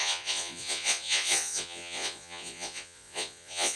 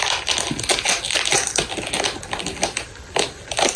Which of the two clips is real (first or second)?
second